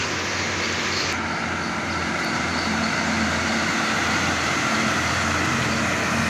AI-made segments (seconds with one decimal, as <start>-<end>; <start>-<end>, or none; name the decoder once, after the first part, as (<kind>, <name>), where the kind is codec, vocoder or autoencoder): 2.0-5.8 (vocoder, BigVGAN v2)